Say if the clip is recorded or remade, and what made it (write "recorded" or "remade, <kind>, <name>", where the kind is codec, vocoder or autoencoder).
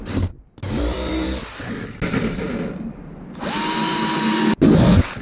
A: recorded